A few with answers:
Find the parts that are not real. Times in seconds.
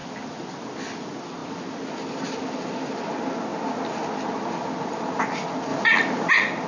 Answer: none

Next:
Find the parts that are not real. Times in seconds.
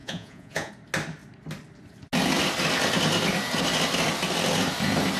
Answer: 0.0-0.7 (vocoder, Vocos)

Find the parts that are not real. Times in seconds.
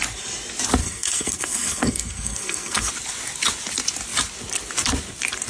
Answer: 0.8-2.9 (codec, SNAC)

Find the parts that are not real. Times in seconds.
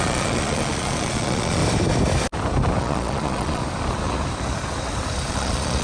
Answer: 0.0-1.6 (vocoder, Vocos); 2.8-3.6; 5.3-5.8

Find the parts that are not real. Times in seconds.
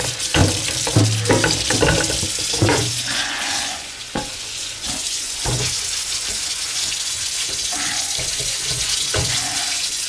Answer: 0.0-0.4 (vocoder, Vocos); 2.4-10.1